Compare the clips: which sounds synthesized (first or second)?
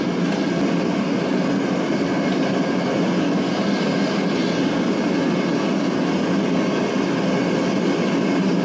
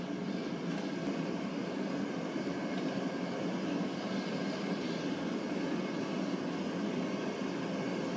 second